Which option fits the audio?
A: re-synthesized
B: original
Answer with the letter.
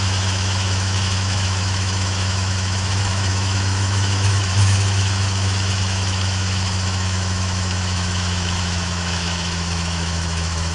A